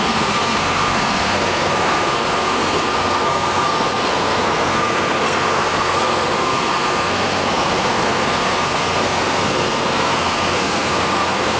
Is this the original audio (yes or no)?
no